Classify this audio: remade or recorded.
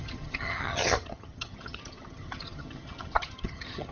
remade